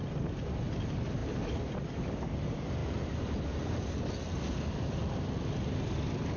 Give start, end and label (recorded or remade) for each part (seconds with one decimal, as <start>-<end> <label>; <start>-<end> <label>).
0.0-6.4 recorded